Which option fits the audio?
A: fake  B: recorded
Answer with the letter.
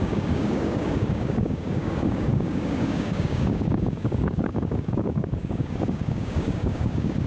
A